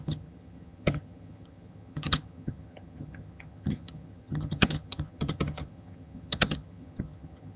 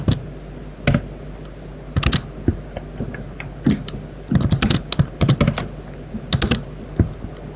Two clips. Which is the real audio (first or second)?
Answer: second